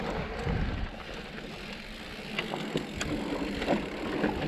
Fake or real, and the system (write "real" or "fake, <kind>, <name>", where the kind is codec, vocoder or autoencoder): real